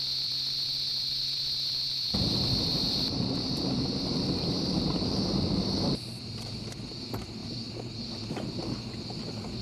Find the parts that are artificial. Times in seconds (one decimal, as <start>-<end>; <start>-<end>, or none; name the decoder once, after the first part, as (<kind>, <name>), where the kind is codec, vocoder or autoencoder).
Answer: 2.7-6.6 (vocoder, BigVGAN v2)